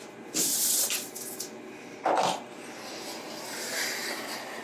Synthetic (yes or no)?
no